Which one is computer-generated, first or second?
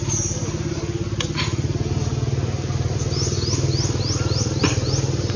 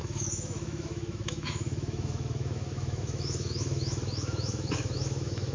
second